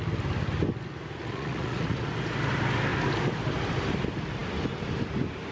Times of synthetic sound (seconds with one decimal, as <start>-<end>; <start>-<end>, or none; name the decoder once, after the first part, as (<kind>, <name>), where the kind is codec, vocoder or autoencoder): 1.2-2.0 (vocoder, Vocos)